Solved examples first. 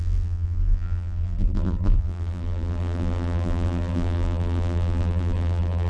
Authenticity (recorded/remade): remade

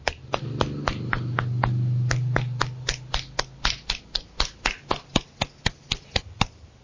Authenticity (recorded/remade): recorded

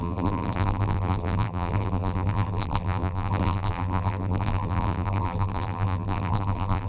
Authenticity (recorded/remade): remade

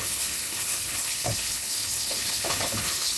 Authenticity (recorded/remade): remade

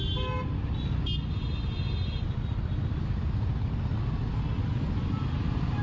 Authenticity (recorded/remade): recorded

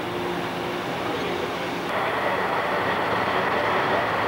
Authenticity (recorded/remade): recorded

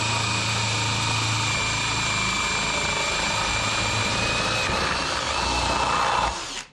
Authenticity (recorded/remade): recorded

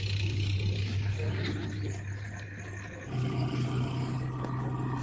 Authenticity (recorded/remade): recorded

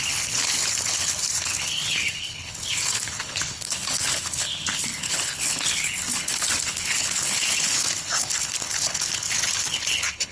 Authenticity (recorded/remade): remade